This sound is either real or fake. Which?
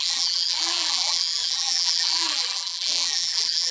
fake